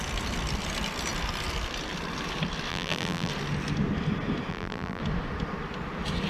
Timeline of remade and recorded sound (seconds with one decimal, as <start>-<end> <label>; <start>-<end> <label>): 0.0-2.7 recorded; 2.7-3.3 remade; 3.3-4.5 recorded; 4.5-5.0 remade; 5.0-6.3 recorded

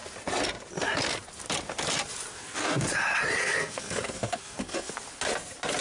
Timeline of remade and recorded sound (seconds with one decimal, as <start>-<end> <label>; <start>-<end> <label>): 0.0-2.3 recorded; 2.3-2.8 remade; 2.8-3.4 recorded; 3.4-4.9 remade; 4.9-5.8 recorded

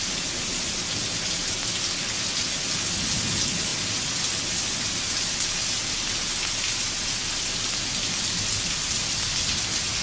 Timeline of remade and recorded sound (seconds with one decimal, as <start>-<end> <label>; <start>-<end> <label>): 0.0-10.0 recorded

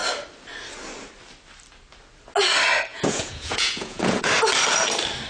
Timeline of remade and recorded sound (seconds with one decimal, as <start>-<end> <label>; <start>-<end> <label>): 0.0-2.9 recorded; 2.9-4.3 remade; 4.3-5.3 recorded

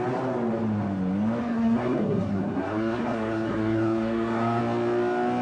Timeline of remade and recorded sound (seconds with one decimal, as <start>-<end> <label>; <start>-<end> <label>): 0.0-1.4 recorded; 1.4-4.6 remade; 4.6-5.4 recorded

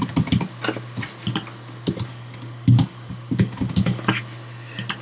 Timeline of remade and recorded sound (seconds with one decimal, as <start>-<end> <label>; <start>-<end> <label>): 0.0-2.1 recorded; 2.1-4.2 remade; 4.2-5.0 recorded

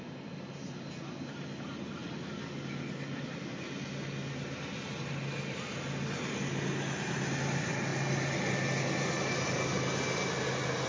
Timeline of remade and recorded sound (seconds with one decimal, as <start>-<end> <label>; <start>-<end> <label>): 0.0-10.9 recorded

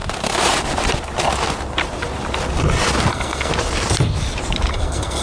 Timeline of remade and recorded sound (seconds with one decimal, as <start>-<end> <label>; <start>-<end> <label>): 0.0-3.1 recorded; 3.1-3.5 remade; 3.5-4.7 recorded; 4.7-5.2 remade